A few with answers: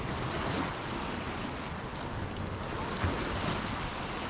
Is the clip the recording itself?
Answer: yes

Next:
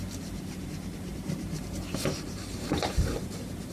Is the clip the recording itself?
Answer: no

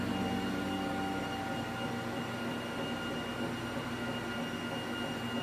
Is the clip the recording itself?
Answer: yes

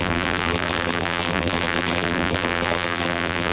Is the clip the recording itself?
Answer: no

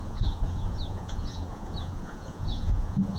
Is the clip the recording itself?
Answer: no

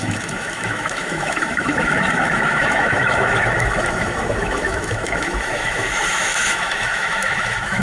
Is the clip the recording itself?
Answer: no